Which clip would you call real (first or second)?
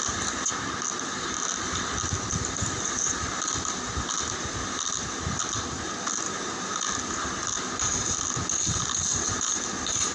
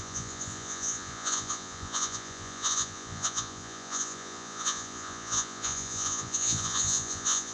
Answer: first